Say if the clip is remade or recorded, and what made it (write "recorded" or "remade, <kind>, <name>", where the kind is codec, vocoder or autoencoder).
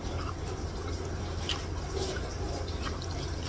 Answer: recorded